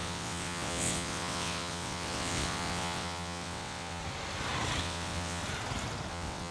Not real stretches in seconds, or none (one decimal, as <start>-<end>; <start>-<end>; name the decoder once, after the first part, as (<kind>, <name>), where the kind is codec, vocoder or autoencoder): 0.0-4.0 (vocoder, WaveNeXt); 4.8-5.4; 6.1-6.5